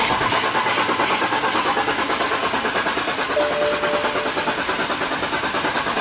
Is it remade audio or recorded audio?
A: recorded